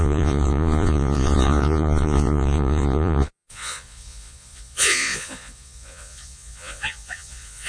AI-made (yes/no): yes